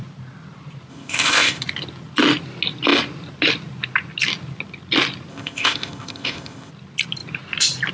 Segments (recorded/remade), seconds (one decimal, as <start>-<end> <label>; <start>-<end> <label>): 0.0-0.9 recorded; 0.9-1.6 remade; 1.6-5.3 recorded; 5.3-6.7 remade; 6.7-7.9 recorded